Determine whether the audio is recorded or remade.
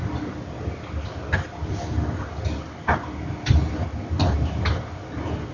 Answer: recorded